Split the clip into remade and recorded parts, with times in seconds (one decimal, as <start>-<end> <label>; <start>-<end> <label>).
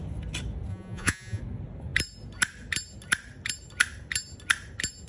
0.0-0.7 recorded; 0.7-1.4 remade; 1.4-5.1 recorded